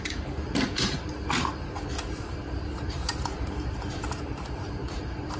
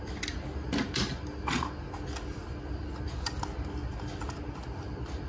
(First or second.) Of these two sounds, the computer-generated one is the first